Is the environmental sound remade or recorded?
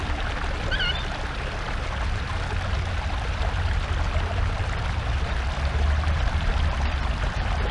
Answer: recorded